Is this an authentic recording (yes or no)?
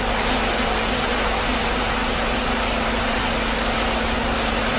yes